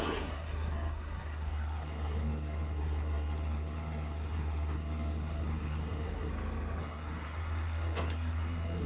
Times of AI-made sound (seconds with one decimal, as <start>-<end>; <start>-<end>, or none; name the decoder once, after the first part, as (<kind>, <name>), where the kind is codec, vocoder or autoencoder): 0.0-6.3 (codec, SNAC); 6.8-8.9